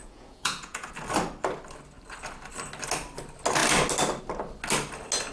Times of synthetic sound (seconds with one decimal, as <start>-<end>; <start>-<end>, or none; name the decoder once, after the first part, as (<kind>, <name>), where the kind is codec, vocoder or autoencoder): 0.0-0.9 (vocoder, Vocos)